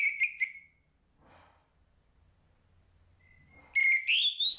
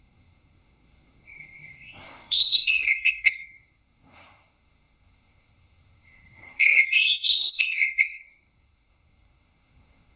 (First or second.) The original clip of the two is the first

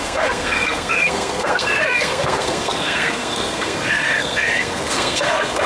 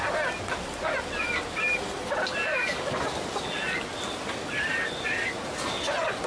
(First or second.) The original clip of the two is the second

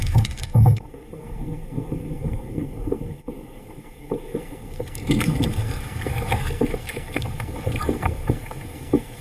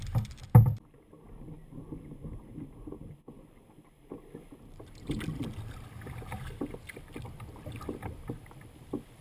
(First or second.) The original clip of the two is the second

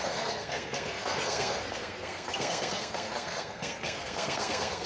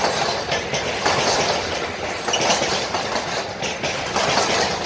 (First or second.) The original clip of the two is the second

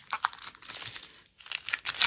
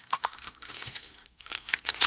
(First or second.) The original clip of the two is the first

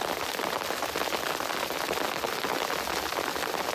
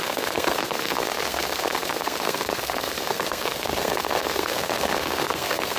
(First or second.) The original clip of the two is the first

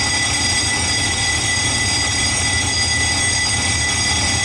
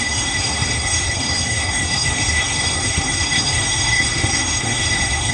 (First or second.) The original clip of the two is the first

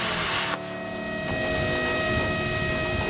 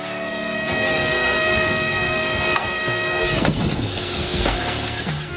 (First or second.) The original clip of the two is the first